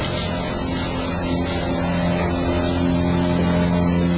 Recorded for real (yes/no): yes